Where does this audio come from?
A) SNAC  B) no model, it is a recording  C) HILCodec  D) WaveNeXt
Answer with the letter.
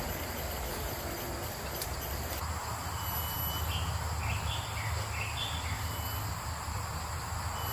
B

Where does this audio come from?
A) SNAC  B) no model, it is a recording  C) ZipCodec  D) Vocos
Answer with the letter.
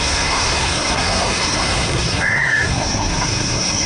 A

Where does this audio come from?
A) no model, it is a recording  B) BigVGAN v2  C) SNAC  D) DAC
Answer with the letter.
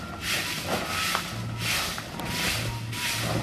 A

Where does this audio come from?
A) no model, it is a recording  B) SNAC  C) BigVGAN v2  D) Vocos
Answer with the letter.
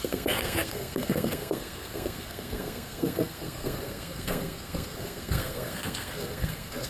B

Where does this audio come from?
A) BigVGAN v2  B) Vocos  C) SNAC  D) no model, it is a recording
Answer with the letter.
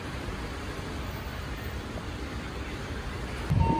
D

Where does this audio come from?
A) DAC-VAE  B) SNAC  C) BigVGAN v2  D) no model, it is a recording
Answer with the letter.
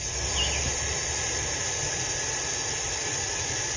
D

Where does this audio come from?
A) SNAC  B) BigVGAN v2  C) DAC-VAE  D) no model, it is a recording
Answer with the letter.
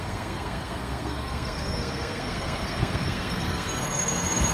A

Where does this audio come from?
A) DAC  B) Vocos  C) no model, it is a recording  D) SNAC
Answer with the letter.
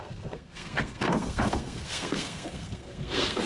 D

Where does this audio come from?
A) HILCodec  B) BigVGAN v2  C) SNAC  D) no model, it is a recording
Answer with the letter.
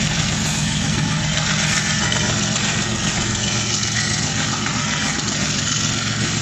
C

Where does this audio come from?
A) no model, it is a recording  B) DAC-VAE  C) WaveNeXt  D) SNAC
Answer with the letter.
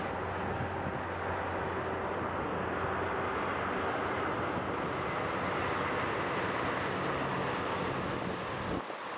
A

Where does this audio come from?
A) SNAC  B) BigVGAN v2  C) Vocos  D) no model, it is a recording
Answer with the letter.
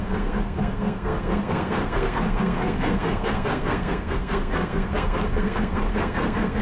A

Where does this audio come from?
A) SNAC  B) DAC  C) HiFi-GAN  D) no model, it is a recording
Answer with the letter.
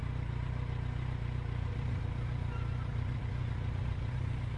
D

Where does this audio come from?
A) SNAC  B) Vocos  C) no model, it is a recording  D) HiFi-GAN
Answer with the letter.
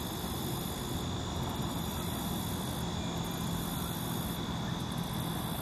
C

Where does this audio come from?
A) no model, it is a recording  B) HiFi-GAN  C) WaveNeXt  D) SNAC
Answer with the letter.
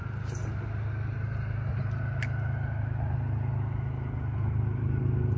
A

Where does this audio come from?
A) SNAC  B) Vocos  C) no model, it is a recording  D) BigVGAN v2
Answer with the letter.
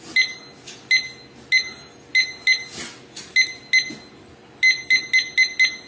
C